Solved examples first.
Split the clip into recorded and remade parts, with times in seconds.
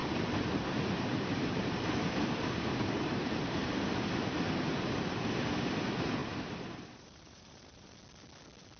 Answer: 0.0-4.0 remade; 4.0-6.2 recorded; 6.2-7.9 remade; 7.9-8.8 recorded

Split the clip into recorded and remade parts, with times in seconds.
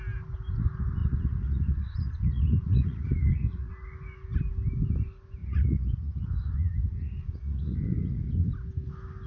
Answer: 0.0-1.0 recorded; 1.0-3.7 remade; 3.7-5.4 recorded; 5.4-8.3 remade; 8.3-9.3 recorded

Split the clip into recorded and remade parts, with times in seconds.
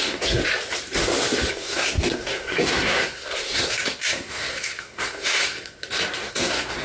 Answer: 0.0-0.4 remade; 0.4-1.5 recorded; 1.5-5.8 remade; 5.8-6.3 recorded; 6.3-6.8 remade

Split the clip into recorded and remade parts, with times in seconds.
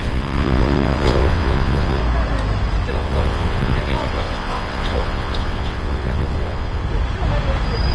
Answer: 0.0-2.0 remade; 2.0-2.9 recorded; 2.9-6.8 remade; 6.8-7.9 recorded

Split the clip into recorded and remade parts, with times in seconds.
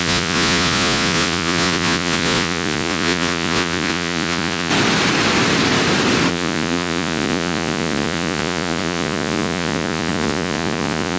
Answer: 0.0-4.7 remade; 4.7-6.3 recorded; 6.3-11.2 remade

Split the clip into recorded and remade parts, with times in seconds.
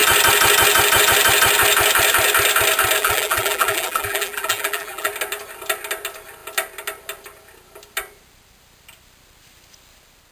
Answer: 0.0-3.0 recorded; 3.0-5.1 remade; 5.1-10.3 recorded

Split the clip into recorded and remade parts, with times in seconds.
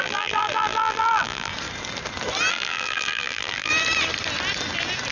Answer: 0.0-1.5 remade; 1.5-2.5 recorded; 2.5-3.7 remade; 3.7-5.1 recorded